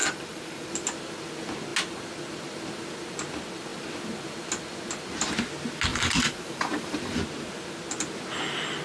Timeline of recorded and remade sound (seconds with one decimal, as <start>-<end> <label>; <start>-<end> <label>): 0.0-0.7 remade; 0.7-5.9 recorded; 5.9-7.2 remade; 7.2-8.8 recorded